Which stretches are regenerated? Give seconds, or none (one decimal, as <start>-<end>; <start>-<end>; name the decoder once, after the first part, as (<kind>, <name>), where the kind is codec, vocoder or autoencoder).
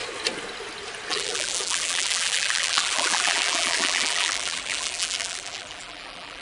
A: 1.1-6.4 (vocoder, BigVGAN v2)